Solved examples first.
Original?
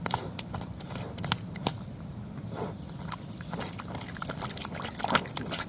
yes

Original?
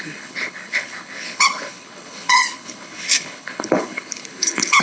no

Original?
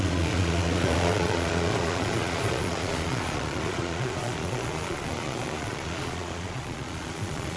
no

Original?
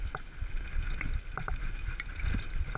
yes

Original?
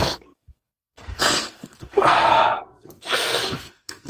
no